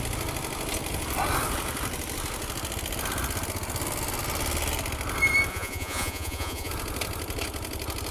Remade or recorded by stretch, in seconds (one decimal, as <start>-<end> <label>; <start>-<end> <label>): 0.0-5.5 recorded; 5.5-6.7 remade; 6.7-8.1 recorded